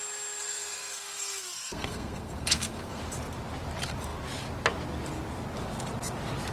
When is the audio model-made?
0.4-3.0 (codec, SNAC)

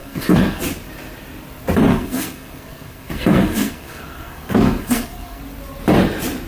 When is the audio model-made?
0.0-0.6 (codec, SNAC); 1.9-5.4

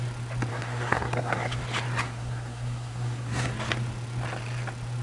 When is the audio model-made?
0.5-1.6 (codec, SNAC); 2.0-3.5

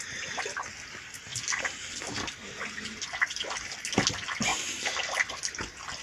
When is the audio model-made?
none